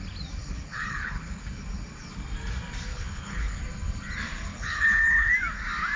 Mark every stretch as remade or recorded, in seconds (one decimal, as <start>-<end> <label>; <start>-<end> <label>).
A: 0.0-0.4 recorded; 0.4-1.4 remade; 1.4-2.9 recorded; 2.9-3.6 remade; 3.6-4.5 recorded; 4.5-5.3 remade; 5.3-6.0 recorded